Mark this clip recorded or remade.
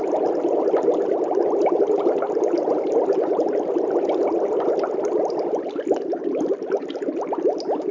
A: recorded